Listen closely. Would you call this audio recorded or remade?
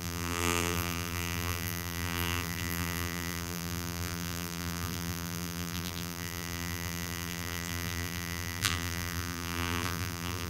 remade